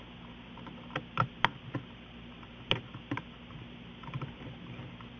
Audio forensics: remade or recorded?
recorded